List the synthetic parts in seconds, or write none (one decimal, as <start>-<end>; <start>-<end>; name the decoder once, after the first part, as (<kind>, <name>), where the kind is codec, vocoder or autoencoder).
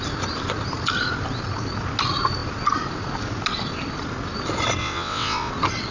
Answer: 4.8-5.5 (vocoder, WaveNeXt)